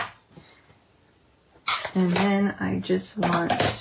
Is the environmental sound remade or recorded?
recorded